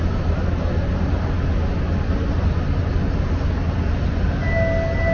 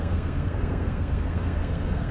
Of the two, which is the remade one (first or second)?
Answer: second